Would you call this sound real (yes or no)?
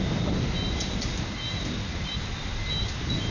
yes